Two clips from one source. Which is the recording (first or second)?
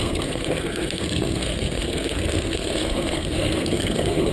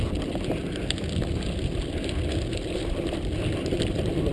second